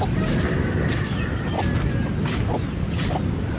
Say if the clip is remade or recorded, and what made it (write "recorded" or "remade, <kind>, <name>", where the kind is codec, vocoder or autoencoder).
recorded